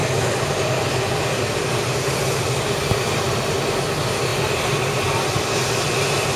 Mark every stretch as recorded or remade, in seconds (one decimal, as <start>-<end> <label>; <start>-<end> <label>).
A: 0.0-6.4 recorded